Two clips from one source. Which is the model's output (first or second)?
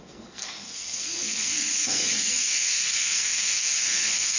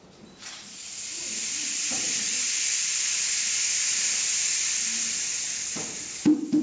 first